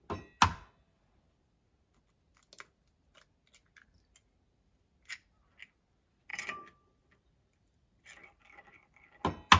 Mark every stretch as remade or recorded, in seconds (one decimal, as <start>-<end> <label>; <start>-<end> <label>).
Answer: 0.0-6.3 recorded; 6.3-8.0 remade; 8.0-9.6 recorded